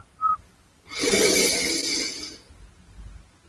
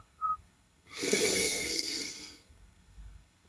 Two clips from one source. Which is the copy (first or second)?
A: second